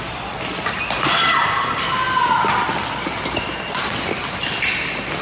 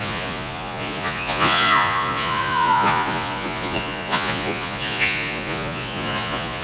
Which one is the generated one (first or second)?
second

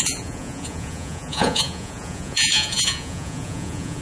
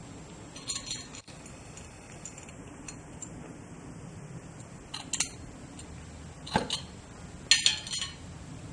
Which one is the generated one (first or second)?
first